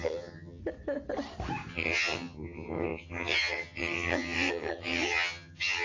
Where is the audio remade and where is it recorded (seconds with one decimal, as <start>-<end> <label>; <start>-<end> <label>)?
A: 0.0-0.6 remade; 0.6-1.7 recorded; 1.7-5.8 remade